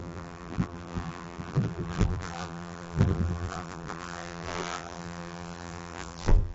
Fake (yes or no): yes